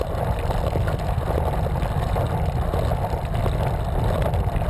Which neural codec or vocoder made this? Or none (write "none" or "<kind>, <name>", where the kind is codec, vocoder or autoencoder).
none